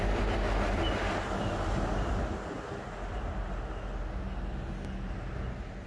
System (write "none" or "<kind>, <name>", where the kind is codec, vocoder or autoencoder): none